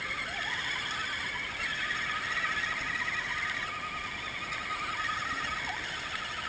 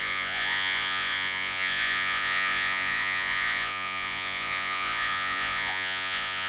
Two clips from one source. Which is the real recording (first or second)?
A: first